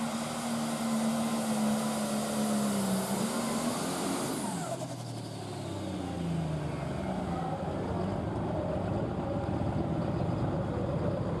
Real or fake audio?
real